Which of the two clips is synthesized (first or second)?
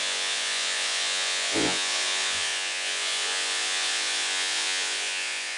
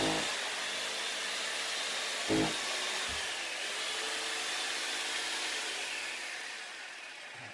first